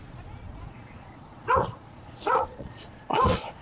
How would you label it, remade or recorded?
remade